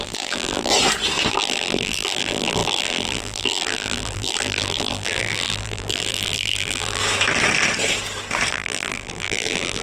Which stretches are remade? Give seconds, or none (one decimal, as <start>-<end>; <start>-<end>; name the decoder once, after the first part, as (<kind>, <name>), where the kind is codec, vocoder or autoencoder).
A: 0.0-0.7 (vocoder, BigVGAN v2); 1.3-7.0; 8.5-9.8

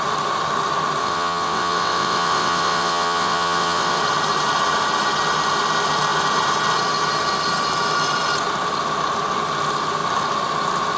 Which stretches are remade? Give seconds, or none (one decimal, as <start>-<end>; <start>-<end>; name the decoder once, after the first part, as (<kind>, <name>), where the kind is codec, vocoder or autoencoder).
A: 1.0-4.0 (vocoder, WaveNeXt)

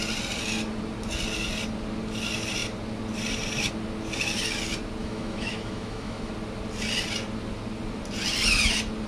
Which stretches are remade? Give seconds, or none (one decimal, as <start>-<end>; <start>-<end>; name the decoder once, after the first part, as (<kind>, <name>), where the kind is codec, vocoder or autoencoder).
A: 5.0-6.3 (autoencoder, DAC-VAE)